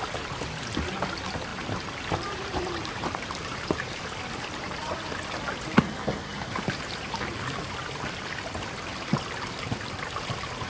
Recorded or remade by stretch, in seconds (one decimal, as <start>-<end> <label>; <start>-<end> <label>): 0.0-1.5 recorded; 1.5-4.0 remade; 4.0-6.3 recorded; 6.3-7.3 remade; 7.3-10.7 recorded